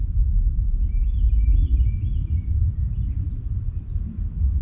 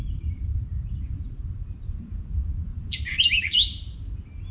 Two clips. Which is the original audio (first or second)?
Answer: first